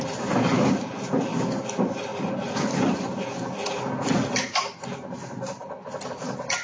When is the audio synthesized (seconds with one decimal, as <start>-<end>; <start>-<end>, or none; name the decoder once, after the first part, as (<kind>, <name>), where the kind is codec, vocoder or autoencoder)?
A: none